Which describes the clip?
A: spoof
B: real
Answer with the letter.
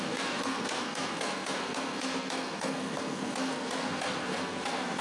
A